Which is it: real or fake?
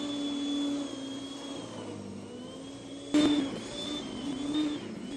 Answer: real